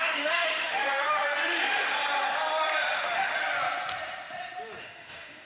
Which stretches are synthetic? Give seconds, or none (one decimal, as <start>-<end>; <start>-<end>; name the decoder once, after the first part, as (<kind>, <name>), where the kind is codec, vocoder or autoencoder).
0.0-2.0 (autoencoder, DAC-VAE); 2.8-3.4; 4.8-5.5